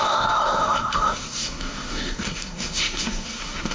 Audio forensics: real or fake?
fake